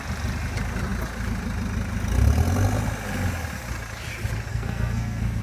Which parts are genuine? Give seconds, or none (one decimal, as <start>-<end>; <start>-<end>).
0.0-4.5